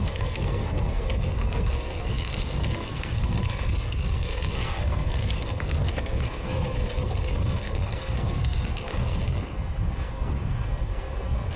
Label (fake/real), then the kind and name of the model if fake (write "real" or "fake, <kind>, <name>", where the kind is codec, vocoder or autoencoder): fake, codec, SNAC